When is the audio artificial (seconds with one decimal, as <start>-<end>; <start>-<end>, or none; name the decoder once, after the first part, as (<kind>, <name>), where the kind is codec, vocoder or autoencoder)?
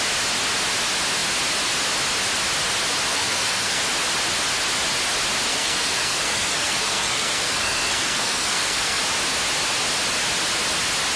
3.1-3.8 (codec, SNAC); 5.5-9.0